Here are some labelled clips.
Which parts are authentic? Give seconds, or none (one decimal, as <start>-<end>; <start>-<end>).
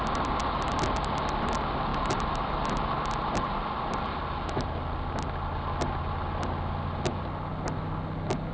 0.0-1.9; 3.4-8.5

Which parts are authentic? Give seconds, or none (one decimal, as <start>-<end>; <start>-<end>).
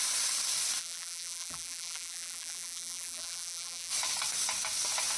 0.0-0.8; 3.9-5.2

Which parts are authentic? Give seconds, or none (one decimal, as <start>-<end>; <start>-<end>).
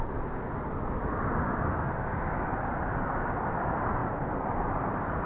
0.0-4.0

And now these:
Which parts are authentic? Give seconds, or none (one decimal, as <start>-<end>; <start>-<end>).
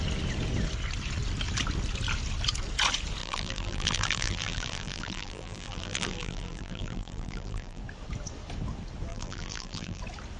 0.0-3.2; 7.8-9.1; 10.0-10.4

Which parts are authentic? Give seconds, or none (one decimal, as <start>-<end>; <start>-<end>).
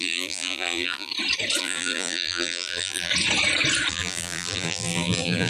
1.1-1.6; 3.1-3.9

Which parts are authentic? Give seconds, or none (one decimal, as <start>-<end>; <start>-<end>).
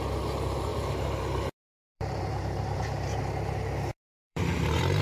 0.0-0.7; 3.2-3.9; 4.4-5.0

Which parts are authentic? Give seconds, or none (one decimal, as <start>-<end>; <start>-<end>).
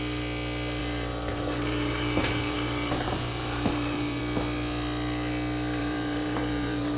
0.0-0.8; 4.2-5.8